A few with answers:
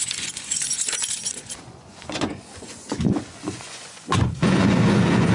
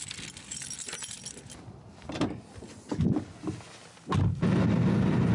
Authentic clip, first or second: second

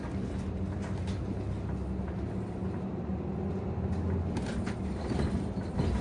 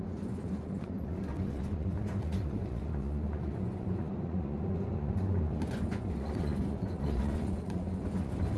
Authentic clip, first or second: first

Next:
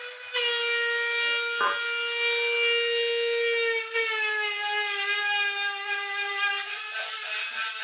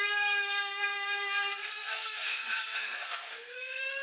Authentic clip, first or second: first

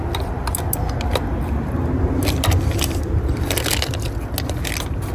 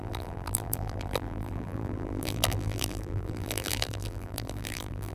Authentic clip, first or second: first